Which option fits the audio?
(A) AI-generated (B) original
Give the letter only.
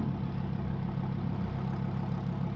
B